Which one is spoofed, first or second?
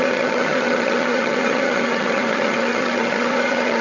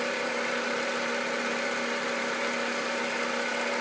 first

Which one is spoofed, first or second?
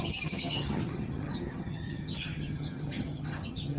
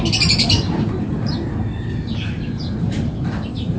first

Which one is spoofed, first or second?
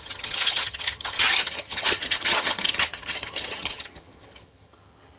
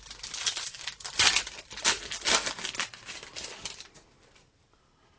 first